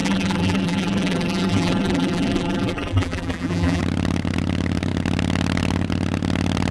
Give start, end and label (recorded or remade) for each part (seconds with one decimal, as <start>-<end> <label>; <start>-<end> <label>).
0.0-3.8 remade; 3.8-6.7 recorded